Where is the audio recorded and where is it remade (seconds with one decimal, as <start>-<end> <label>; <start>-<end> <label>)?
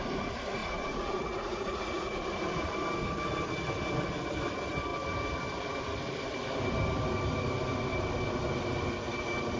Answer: 0.0-0.6 recorded; 0.6-2.2 remade; 2.2-9.6 recorded